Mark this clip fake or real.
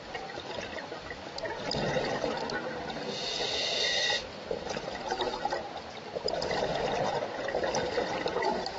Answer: real